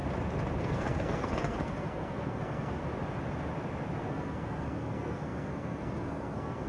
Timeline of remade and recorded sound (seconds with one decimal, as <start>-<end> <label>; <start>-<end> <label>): 0.0-0.6 recorded; 0.6-2.8 remade; 2.8-4.0 recorded; 4.0-6.7 remade